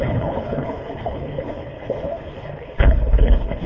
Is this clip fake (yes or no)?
yes